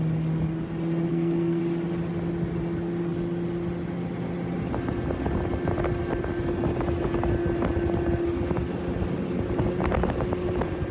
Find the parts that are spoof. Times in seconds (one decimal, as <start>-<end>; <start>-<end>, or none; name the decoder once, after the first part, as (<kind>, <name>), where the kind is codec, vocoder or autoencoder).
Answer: 1.1-1.6 (codec, SNAC)